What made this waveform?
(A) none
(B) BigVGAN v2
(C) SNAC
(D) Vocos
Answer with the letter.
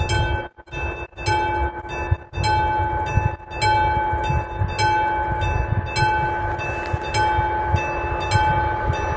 A